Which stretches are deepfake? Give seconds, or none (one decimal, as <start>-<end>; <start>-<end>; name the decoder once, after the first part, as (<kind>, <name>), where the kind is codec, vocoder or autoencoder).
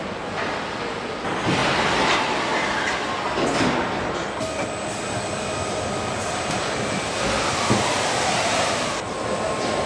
none